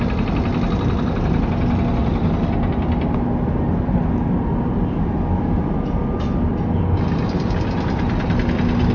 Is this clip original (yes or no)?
yes